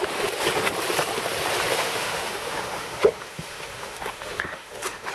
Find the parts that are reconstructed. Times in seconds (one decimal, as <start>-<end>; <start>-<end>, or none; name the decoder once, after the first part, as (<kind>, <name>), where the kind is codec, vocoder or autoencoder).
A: 1.7-5.1 (autoencoder, DAC-VAE)